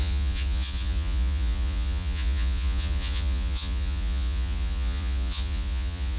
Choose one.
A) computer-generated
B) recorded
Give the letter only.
A